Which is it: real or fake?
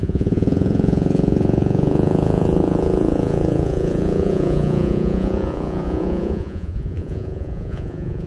fake